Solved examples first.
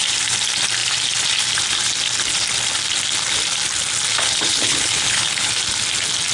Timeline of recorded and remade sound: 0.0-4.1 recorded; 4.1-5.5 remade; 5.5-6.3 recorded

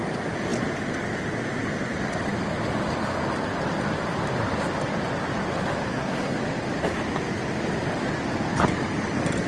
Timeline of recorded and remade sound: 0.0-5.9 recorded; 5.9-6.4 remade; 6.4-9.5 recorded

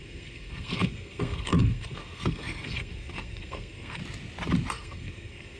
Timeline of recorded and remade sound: 0.0-4.0 remade; 4.0-4.7 recorded; 4.7-5.6 remade

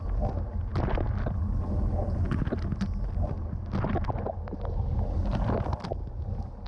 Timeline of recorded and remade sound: 0.0-6.7 recorded

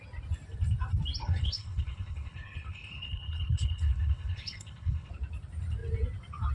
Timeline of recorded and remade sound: 0.0-1.2 recorded; 1.2-5.1 remade; 5.1-6.5 recorded

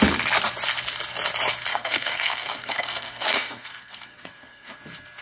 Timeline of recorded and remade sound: 0.0-1.7 recorded; 1.7-4.8 remade; 4.8-5.2 recorded